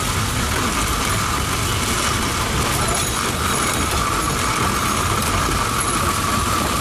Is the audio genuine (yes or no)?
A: no